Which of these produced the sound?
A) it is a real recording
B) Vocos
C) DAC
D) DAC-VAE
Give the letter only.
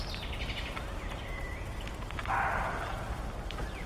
A